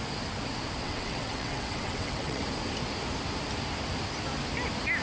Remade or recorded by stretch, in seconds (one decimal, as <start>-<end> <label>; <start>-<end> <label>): 0.0-0.8 recorded; 0.8-2.4 remade; 2.4-5.0 recorded